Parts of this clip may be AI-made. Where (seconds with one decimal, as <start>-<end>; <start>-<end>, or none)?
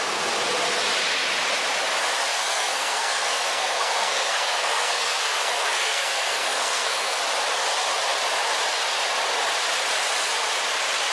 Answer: 2.3-7.2